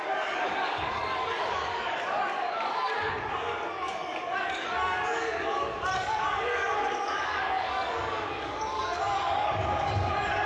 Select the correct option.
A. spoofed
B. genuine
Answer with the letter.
A